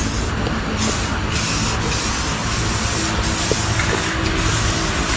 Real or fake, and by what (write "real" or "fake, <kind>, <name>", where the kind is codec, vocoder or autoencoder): real